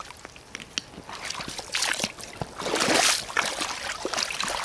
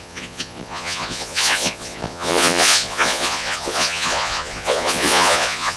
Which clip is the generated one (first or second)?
second